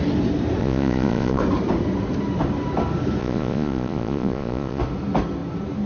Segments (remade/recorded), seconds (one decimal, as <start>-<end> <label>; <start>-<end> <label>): 0.0-0.6 recorded; 0.6-1.4 remade; 1.4-3.2 recorded; 3.2-4.8 remade; 4.8-5.9 recorded